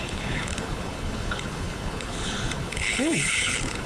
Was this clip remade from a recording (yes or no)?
yes